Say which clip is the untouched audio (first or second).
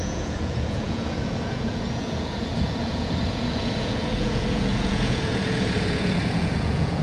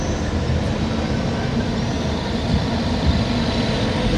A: second